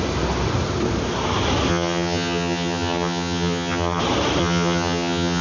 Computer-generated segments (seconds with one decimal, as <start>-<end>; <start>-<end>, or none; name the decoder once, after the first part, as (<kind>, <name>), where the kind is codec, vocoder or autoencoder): 1.7-4.0 (vocoder, HiFi-GAN); 4.4-5.4